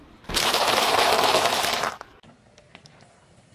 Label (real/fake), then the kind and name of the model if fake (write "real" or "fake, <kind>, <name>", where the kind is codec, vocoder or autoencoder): fake, vocoder, BigVGAN v2